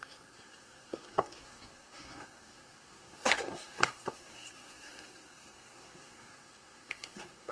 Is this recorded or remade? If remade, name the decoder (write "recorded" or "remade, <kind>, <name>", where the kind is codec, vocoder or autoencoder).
remade, codec, SNAC